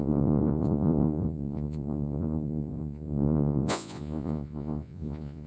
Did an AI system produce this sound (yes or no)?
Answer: yes